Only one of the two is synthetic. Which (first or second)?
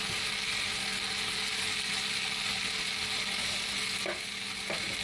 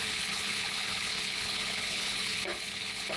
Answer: second